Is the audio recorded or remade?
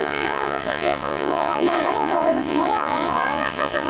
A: remade